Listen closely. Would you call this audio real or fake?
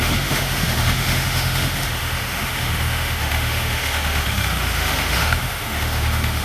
fake